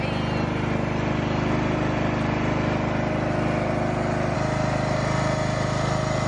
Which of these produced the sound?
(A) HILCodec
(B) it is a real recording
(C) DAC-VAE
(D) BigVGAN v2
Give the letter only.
B